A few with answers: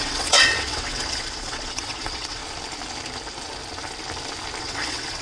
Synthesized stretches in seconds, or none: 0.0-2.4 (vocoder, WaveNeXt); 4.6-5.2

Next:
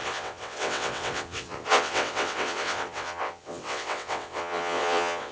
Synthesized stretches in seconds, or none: 0.0-5.3 (vocoder, WaveNeXt)

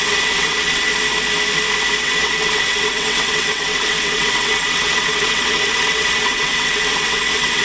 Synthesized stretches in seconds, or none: 0.0-0.9 (vocoder, WaveNeXt); 2.0-7.6

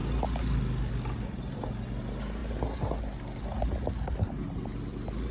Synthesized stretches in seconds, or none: none